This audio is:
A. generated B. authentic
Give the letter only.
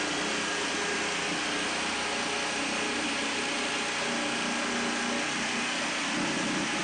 B